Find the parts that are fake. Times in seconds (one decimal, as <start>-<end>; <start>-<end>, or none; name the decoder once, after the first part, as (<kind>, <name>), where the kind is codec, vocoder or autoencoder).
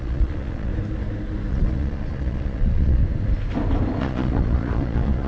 0.0-0.7 (vocoder, Vocos); 1.5-3.0; 4.0-5.3